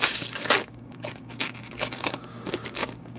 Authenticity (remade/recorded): remade